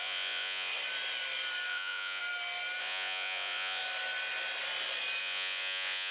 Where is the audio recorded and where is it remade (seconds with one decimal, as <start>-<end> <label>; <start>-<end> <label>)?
0.0-0.7 remade; 0.7-1.7 recorded; 1.7-2.2 remade; 2.2-2.8 recorded; 2.8-3.8 remade; 3.8-5.2 recorded; 5.2-6.1 remade